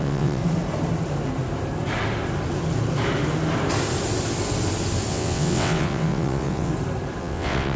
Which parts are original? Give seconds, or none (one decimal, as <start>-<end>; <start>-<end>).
0.4-5.1; 6.7-7.2

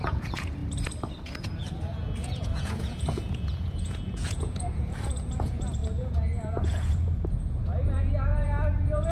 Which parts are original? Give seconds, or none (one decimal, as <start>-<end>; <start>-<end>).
0.6-1.4